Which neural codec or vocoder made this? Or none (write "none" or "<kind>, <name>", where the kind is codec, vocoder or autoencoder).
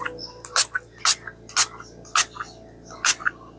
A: none